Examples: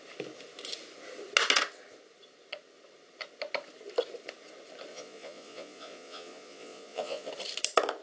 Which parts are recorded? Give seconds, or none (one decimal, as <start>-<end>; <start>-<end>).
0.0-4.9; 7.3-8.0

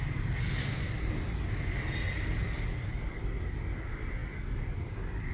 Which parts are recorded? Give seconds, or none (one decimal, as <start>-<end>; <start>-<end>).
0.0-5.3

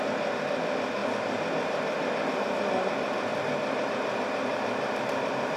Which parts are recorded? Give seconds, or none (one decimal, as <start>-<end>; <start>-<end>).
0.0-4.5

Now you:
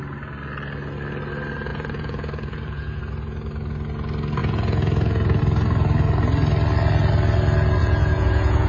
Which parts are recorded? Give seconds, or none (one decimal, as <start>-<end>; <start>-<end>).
0.0-1.7; 3.0-4.4; 5.4-7.8

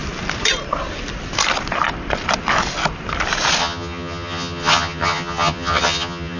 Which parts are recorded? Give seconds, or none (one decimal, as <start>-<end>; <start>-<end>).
0.0-3.6